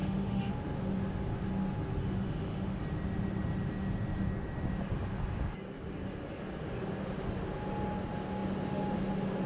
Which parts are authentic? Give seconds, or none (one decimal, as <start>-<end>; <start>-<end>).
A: 0.5-2.0; 2.8-9.5